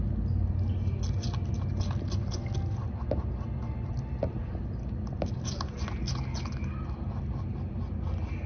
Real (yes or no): yes